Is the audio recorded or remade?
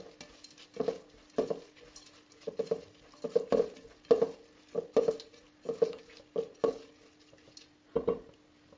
recorded